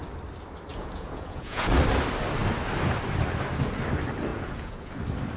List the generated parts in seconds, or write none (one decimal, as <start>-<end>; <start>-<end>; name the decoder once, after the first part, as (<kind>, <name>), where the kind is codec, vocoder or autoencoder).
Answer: 0.7-1.7 (vocoder, Vocos); 4.3-4.9